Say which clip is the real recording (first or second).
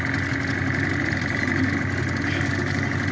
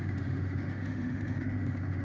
first